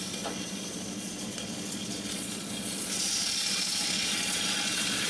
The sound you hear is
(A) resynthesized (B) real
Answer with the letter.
A